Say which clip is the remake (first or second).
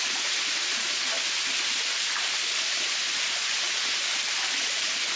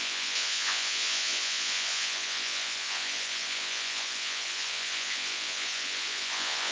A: second